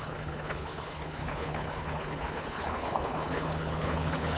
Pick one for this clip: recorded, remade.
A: remade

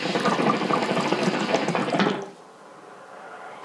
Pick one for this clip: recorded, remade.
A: recorded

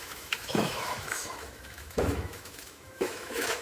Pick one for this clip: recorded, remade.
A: remade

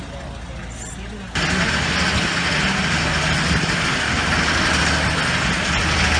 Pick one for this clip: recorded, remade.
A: recorded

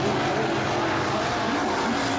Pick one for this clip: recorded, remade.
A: recorded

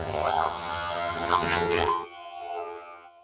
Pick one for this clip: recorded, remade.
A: remade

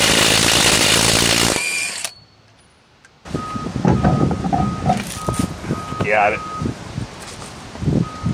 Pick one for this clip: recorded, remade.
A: recorded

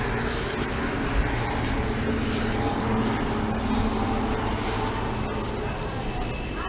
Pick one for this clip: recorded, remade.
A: recorded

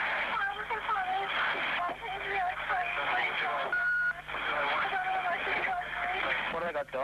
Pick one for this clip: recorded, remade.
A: recorded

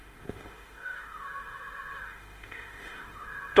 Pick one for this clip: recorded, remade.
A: remade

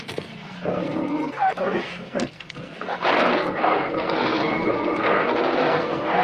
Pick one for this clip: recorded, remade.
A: remade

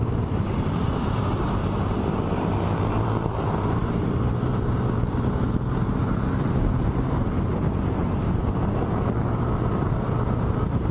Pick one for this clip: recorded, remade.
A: remade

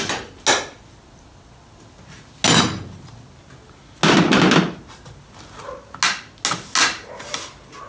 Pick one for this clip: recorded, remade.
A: recorded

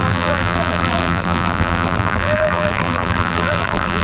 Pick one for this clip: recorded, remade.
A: remade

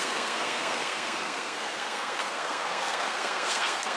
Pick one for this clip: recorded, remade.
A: remade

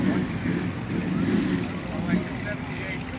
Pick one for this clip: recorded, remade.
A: recorded